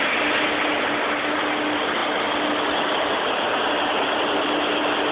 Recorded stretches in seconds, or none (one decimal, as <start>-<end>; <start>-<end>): 0.0-5.1